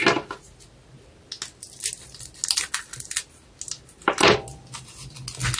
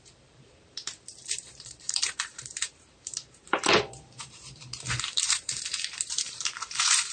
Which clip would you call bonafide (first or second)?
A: first